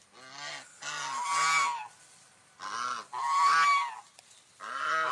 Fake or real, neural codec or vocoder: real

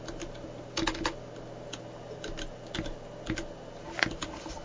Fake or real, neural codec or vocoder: real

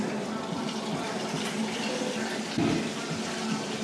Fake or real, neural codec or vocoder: real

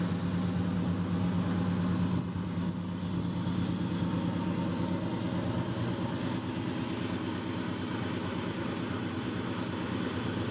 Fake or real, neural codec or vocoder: real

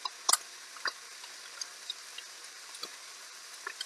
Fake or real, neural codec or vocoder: real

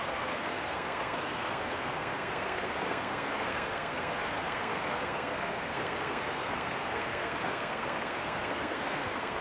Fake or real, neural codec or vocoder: fake, codec, SNAC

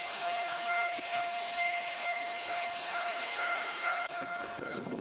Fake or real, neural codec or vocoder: fake, codec, HILCodec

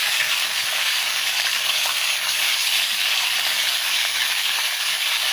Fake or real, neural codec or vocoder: fake, codec, DAC